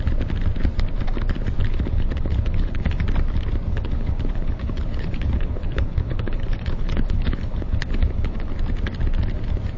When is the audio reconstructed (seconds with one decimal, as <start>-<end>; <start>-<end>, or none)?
1.7-3.0; 3.7-8.5